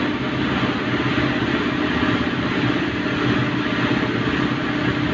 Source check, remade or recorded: recorded